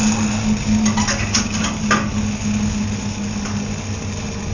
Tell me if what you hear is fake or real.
real